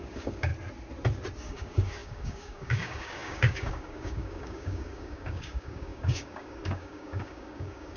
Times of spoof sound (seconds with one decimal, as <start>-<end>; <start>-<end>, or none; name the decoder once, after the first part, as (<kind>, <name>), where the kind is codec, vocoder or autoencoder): 0.0-0.5 (codec, DAC); 1.4-8.0